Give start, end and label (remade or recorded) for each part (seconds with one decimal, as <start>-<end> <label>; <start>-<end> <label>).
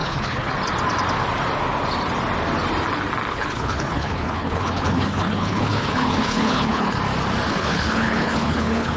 0.0-0.5 remade; 0.5-3.3 recorded; 3.3-7.0 remade; 7.0-7.5 recorded; 7.5-9.0 remade